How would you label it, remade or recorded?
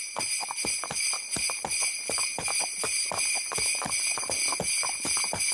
recorded